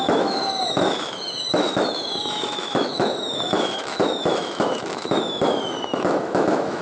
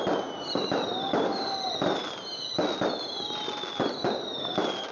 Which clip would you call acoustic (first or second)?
second